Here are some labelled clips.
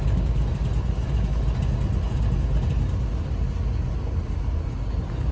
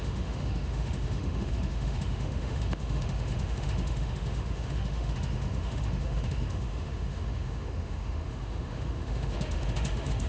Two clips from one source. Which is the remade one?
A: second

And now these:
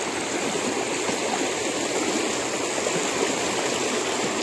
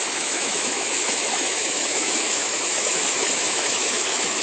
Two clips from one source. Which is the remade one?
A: second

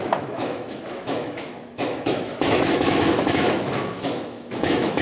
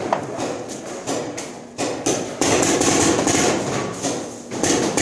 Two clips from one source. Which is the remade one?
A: first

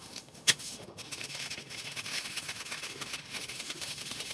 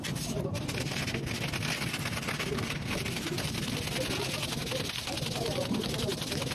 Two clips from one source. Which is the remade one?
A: first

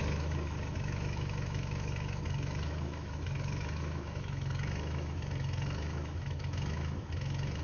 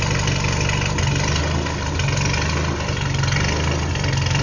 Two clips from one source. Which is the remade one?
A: first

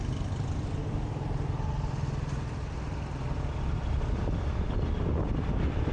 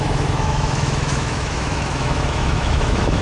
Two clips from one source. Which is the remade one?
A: second